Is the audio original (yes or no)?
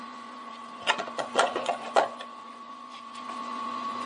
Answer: no